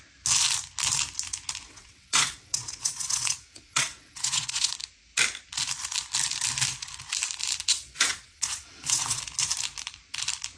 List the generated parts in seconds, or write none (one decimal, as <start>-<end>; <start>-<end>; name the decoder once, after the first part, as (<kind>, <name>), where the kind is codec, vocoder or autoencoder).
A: 1.6-4.7 (vocoder, WaveNeXt); 7.7-9.2